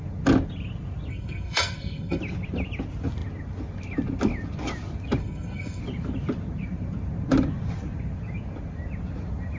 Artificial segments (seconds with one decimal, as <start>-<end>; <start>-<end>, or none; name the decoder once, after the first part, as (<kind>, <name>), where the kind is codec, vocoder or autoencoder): 1.1-2.2 (codec, SNAC); 5.2-5.8